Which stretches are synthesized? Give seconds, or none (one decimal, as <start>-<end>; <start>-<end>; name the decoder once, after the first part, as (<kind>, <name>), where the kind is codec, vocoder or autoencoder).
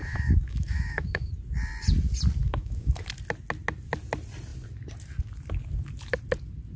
0.0-1.3 (autoencoder, DAC-VAE); 2.4-3.0